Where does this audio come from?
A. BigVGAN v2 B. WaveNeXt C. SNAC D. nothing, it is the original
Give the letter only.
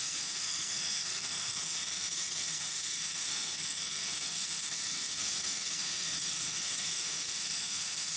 C